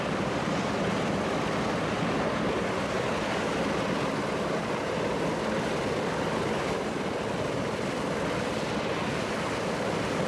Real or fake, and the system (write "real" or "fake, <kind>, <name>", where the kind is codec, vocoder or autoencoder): real